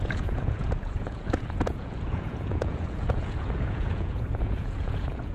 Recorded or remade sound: remade